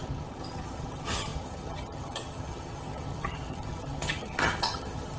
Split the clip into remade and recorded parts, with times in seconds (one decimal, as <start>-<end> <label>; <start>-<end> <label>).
0.0-5.2 remade

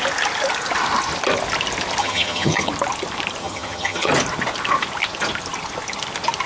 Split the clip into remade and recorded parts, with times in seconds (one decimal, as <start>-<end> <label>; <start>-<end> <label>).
0.0-2.0 recorded; 2.0-2.7 remade; 2.7-3.4 recorded; 3.4-4.1 remade; 4.1-6.5 recorded

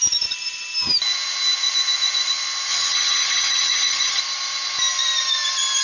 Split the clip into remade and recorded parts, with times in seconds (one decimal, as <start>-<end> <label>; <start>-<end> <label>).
0.0-2.7 recorded; 2.7-4.2 remade; 4.2-5.8 recorded